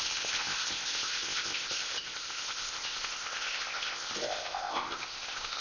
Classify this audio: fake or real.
fake